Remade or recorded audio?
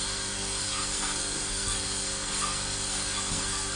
remade